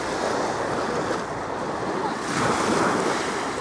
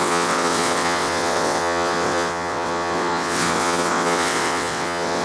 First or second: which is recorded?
first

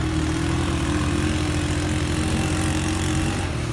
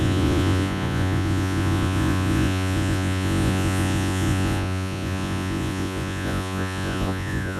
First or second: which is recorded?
first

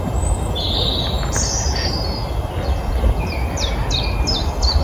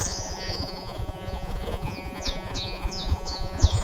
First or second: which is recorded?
first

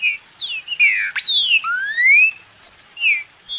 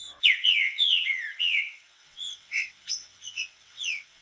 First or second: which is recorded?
first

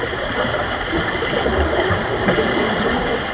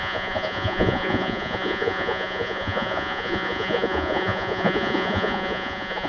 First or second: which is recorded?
first